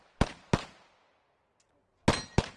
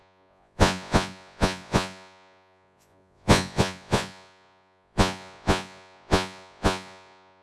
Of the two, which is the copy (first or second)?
second